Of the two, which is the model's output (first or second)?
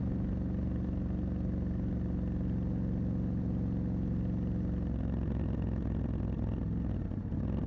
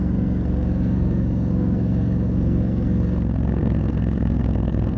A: second